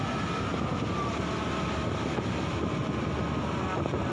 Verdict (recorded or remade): recorded